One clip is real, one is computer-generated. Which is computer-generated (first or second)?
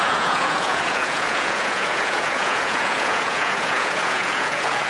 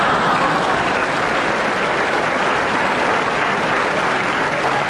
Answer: first